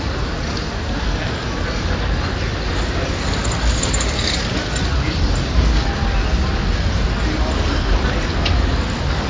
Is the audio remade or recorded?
recorded